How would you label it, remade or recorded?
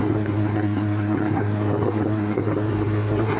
remade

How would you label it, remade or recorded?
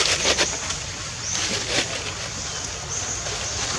recorded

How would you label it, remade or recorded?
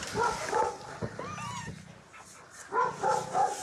recorded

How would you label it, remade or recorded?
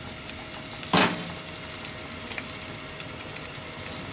recorded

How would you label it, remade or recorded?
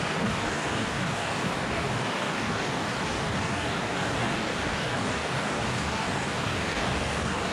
remade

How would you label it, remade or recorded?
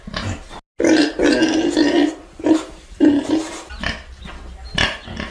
recorded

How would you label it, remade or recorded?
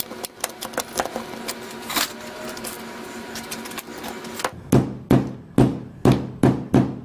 recorded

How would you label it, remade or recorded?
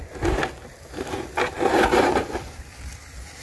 recorded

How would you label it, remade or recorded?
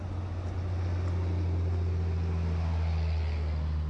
recorded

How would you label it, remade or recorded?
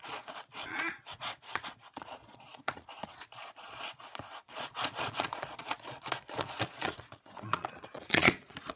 remade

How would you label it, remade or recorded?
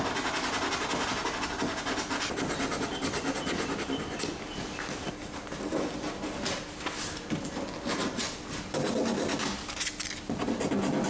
recorded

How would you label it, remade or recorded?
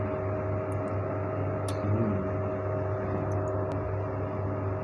recorded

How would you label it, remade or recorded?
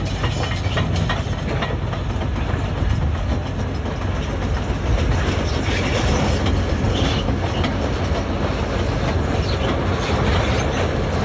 recorded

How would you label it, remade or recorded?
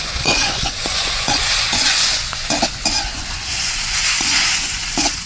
remade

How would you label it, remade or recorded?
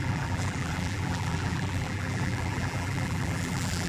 remade